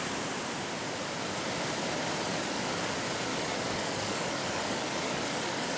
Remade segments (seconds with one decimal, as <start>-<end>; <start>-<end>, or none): 2.3-2.9; 3.3-5.8